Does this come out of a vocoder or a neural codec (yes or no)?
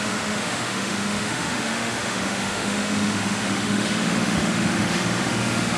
yes